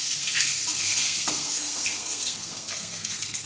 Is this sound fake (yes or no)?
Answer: yes